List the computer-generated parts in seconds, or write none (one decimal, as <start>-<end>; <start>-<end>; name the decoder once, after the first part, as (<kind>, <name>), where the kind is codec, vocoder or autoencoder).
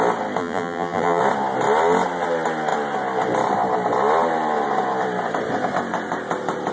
0.4-1.2 (vocoder, BigVGAN v2)